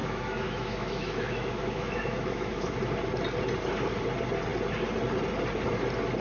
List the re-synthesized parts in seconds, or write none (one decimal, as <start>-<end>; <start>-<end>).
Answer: 0.0-2.8